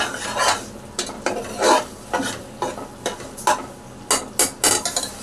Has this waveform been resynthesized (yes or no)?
no